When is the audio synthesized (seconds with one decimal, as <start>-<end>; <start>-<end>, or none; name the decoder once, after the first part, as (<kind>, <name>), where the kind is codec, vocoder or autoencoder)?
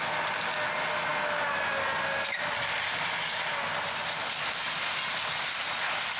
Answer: none